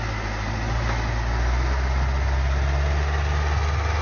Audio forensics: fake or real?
real